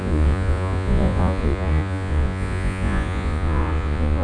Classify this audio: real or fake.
fake